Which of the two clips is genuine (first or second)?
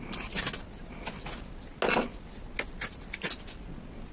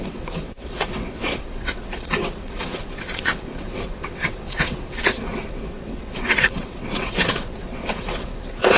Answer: first